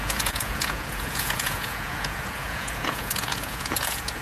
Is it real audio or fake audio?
fake